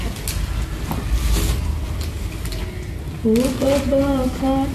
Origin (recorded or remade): recorded